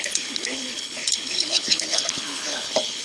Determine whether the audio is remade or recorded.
remade